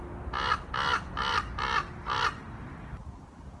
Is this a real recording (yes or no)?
yes